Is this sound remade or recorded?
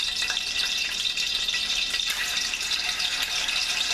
remade